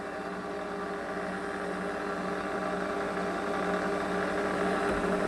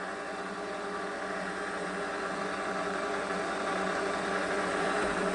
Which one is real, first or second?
first